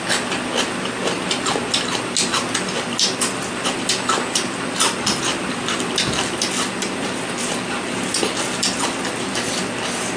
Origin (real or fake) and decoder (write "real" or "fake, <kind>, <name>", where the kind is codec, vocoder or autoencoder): real